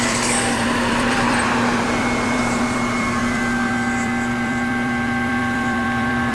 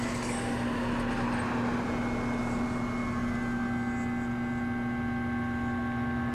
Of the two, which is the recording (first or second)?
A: second